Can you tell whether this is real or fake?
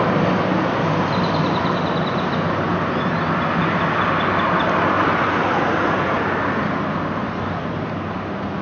real